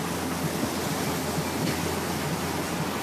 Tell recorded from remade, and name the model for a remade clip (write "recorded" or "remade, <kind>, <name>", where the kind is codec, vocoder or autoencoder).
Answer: recorded